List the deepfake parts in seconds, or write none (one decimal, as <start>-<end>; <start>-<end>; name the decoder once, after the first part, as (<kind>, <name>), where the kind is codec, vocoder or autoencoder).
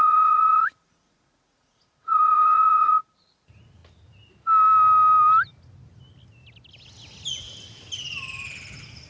0.0-3.8 (vocoder, Vocos)